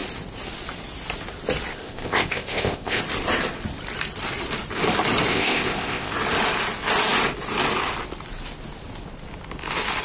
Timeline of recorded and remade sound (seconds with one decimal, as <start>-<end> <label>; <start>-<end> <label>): 0.0-1.7 recorded; 1.7-3.0 remade; 3.0-5.3 recorded; 5.3-6.1 remade; 6.1-10.0 recorded